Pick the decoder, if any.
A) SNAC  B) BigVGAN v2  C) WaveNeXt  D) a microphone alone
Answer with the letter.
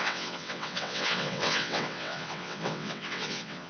C